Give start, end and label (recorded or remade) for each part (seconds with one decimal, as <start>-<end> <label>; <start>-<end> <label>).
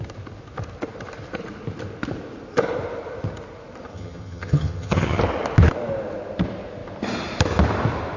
0.0-3.9 recorded; 3.9-5.2 remade; 5.2-8.2 recorded